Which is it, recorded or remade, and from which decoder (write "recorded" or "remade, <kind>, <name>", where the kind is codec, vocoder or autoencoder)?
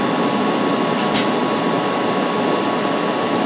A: recorded